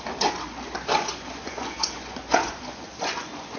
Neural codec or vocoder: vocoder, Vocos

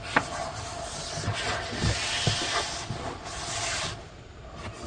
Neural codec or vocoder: none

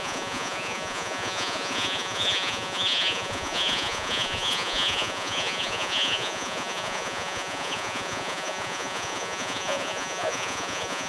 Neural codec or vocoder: vocoder, Vocos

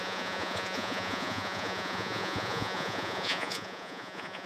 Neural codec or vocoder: vocoder, Vocos